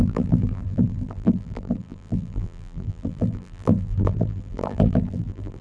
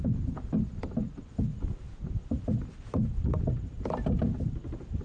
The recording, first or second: second